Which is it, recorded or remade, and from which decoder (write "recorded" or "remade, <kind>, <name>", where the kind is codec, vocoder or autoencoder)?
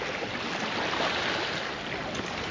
recorded